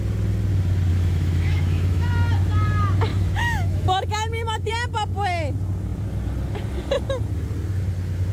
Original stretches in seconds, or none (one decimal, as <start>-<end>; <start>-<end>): 0.0-0.9; 2.1-3.1; 4.7-8.3